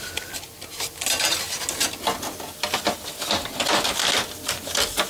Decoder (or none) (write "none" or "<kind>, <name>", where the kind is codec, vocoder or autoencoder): none